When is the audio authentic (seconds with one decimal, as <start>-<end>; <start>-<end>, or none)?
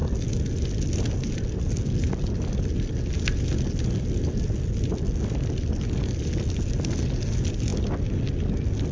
0.0-8.9